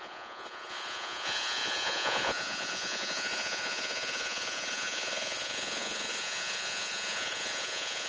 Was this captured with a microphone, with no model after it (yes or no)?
no